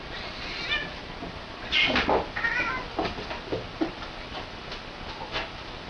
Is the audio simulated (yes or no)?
no